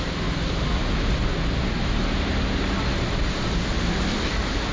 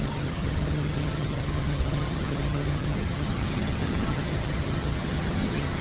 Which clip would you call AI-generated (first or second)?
second